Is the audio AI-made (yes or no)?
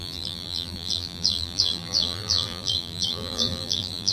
yes